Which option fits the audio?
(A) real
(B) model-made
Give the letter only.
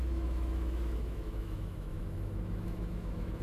B